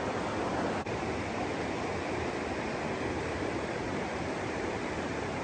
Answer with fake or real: fake